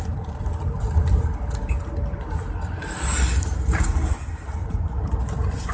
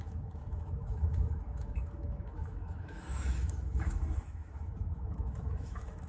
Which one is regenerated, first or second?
second